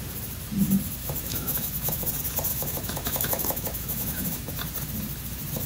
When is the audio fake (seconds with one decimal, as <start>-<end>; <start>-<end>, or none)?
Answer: 1.0-2.0; 2.5-4.5